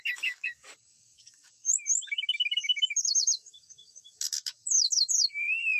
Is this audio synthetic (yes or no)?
yes